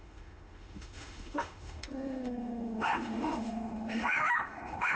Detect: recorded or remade remade